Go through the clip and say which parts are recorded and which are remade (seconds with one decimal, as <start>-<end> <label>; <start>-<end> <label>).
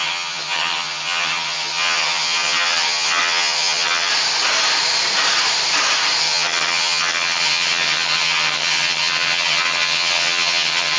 0.0-4.1 remade; 4.1-6.2 recorded; 6.2-11.0 remade